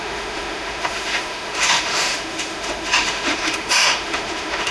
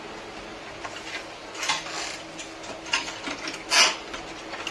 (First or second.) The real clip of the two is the second